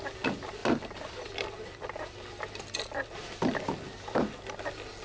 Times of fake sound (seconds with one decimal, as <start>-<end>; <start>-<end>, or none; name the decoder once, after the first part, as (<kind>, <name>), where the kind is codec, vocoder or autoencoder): 0.6-3.6 (vocoder, BigVGAN v2)